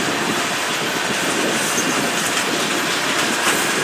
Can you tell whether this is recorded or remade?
recorded